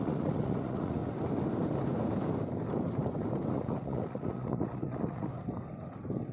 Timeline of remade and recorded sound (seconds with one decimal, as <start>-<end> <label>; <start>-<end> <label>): 0.0-1.0 remade; 1.0-3.5 recorded; 3.5-5.3 remade; 5.3-6.3 recorded